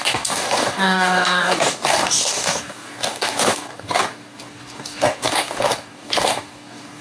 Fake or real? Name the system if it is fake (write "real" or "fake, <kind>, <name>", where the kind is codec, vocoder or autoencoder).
fake, codec, DAC